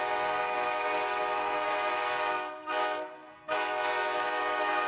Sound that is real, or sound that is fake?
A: fake